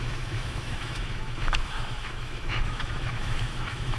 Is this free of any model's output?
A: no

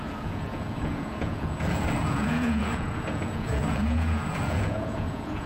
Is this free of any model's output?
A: no